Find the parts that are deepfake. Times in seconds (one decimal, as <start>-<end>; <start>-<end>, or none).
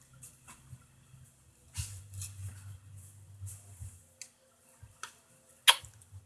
none